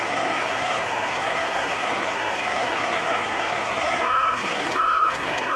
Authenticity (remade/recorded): remade